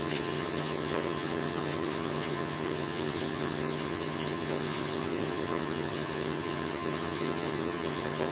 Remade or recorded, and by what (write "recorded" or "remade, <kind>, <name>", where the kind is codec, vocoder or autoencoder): remade, vocoder, HiFi-GAN